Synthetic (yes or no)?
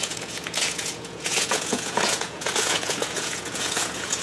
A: yes